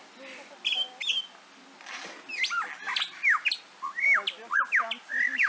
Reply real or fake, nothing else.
real